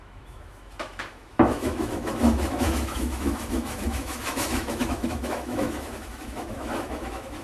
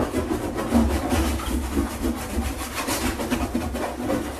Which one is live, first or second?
second